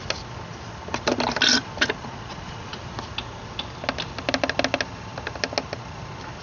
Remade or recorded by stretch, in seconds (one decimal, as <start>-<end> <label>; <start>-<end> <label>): 0.0-2.0 recorded; 2.0-2.8 remade; 2.8-6.4 recorded